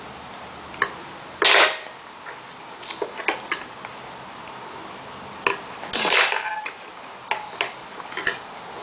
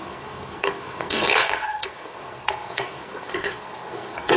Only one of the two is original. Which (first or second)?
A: first